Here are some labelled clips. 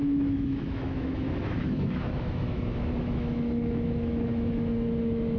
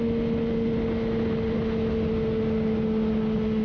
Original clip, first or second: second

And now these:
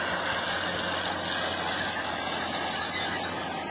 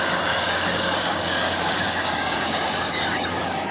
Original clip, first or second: first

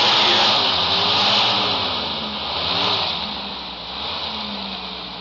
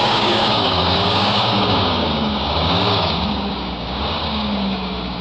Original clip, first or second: first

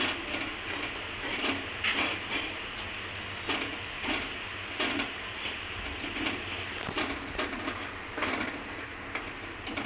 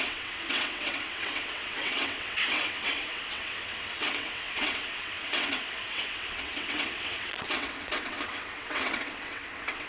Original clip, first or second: first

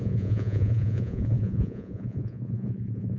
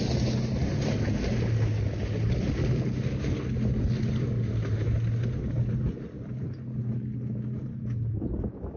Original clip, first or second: second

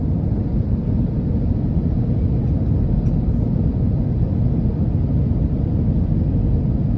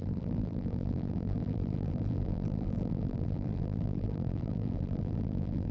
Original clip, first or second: first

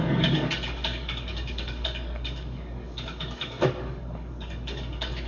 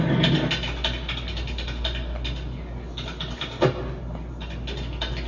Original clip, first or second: second